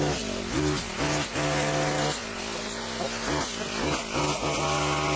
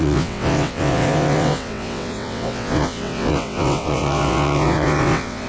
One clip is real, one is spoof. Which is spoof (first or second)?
second